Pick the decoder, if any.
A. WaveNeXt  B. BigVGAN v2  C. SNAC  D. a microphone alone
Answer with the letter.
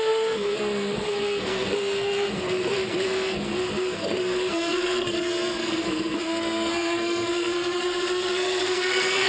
C